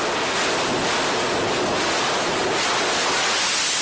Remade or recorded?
recorded